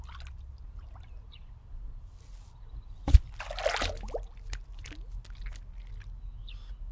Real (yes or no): yes